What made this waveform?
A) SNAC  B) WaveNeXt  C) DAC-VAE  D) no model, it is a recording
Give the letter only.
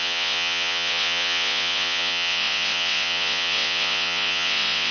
B